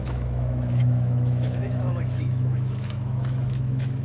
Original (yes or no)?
no